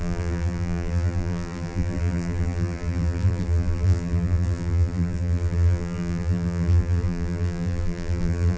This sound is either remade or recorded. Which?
remade